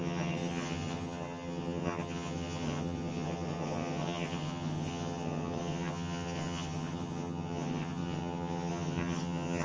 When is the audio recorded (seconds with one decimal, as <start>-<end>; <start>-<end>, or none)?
none